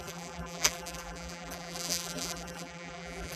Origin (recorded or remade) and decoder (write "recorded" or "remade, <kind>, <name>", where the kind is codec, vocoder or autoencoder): remade, vocoder, BigVGAN v2